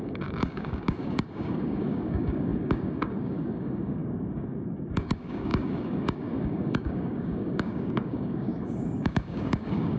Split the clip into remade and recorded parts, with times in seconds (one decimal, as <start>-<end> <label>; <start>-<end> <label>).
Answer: 0.0-10.0 remade